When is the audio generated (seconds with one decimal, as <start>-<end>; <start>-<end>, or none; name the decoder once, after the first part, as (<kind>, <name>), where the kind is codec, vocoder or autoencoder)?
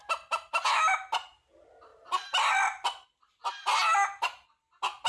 none